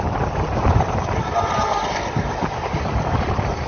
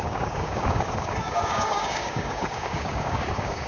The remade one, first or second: second